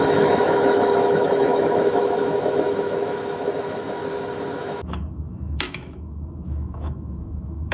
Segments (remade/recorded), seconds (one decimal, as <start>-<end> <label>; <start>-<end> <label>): 0.0-4.0 remade; 4.0-4.6 recorded; 4.6-7.7 remade